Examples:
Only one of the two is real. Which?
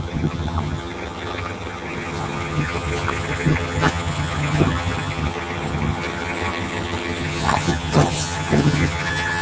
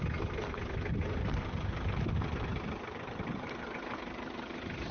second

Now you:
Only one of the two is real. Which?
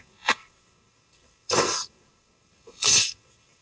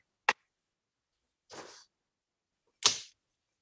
second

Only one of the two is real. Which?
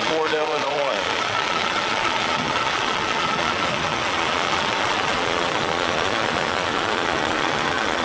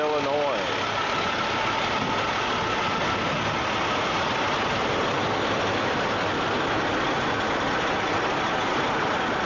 second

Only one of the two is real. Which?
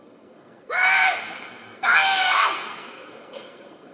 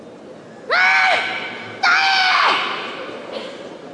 second